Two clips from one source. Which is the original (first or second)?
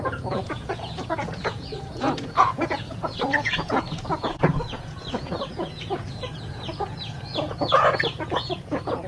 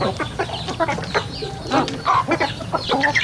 second